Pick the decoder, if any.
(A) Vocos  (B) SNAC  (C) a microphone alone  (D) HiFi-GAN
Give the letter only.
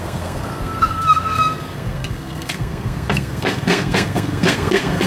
B